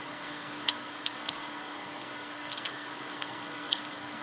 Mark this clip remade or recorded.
remade